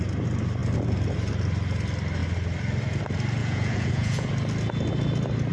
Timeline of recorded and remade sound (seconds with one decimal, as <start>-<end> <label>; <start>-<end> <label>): 0.0-3.4 recorded; 3.4-4.3 remade; 4.3-5.5 recorded